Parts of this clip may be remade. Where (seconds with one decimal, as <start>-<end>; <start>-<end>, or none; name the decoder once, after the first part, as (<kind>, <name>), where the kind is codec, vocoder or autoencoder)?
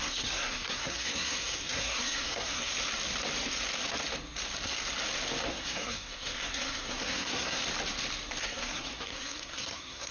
0.0-2.7 (codec, SNAC); 5.5-7.6; 8.4-10.1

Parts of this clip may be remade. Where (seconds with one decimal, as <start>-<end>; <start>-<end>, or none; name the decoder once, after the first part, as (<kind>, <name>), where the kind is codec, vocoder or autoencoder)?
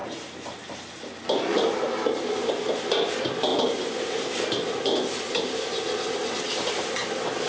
none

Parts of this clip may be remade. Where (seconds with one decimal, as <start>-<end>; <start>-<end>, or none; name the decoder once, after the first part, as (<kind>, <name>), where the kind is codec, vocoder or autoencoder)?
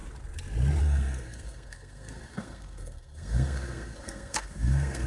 0.8-5.1 (codec, SNAC)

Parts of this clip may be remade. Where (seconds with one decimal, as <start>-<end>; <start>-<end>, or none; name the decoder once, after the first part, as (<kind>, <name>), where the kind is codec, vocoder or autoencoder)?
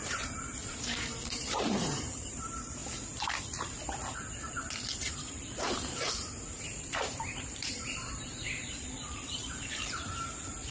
0.0-2.8 (vocoder, BigVGAN v2); 4.5-10.7